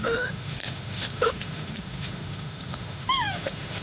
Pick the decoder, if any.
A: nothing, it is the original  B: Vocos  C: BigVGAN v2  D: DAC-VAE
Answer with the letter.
D